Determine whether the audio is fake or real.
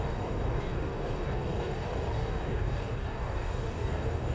fake